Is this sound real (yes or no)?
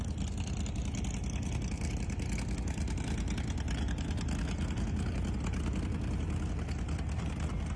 yes